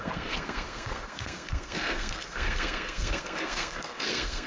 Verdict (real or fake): fake